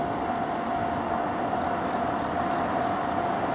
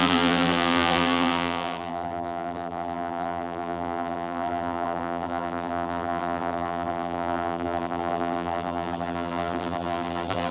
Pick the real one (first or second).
first